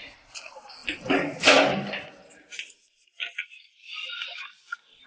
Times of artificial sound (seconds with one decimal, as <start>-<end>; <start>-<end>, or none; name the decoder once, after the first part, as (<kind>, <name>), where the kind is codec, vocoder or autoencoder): none